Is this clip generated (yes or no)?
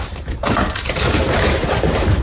yes